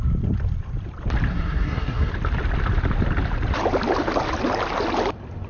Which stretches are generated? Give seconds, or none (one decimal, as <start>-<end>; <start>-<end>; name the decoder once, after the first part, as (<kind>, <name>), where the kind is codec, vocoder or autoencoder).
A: 1.3-2.1 (codec, SNAC)

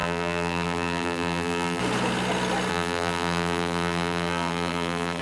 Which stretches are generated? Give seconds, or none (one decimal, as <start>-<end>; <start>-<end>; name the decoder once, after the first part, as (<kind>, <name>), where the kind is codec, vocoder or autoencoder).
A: 0.0-1.8 (vocoder, BigVGAN v2); 2.7-5.2